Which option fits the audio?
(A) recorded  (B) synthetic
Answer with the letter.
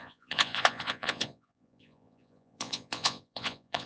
B